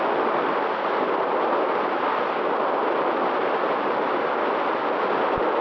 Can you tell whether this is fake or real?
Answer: real